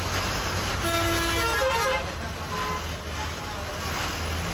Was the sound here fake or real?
real